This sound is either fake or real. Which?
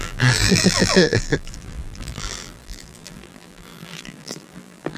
fake